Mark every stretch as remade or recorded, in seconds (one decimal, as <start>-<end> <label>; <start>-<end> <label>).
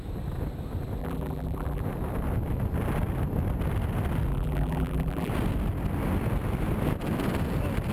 0.0-1.0 recorded; 1.0-1.8 remade; 1.8-4.3 recorded; 4.3-5.3 remade; 5.3-7.9 recorded